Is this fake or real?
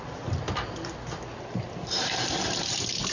real